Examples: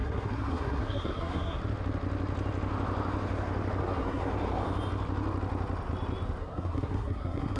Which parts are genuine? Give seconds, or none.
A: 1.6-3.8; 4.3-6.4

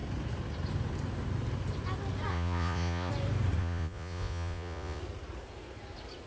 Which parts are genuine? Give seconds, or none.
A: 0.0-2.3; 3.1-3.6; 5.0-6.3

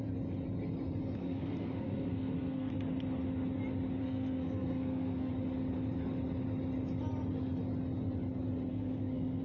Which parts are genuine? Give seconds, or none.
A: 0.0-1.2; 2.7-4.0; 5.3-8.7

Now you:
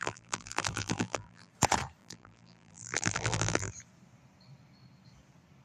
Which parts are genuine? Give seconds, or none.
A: 1.5-2.0; 3.7-5.6

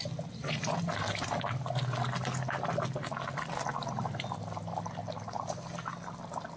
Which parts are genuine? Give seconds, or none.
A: 0.0-6.6

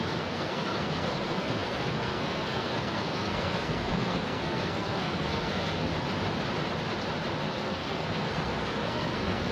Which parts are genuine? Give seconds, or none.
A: 5.9-7.4

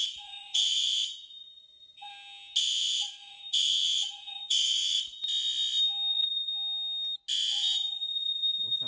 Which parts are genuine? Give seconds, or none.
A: 2.1-2.6; 5.3-6.1; 6.5-7.3